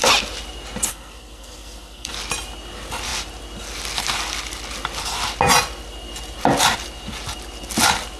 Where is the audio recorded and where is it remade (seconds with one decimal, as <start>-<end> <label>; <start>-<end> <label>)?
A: 0.0-0.9 recorded; 0.9-2.1 remade; 2.1-8.2 recorded